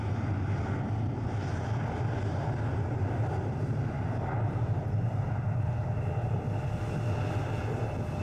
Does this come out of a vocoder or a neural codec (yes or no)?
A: no